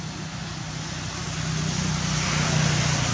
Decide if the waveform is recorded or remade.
recorded